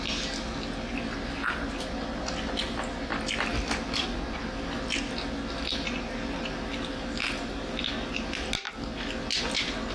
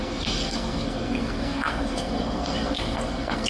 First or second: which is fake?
second